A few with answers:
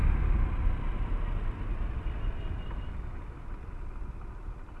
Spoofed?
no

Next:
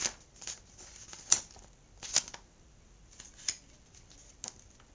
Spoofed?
no